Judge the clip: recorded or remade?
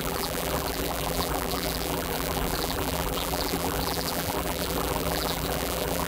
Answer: remade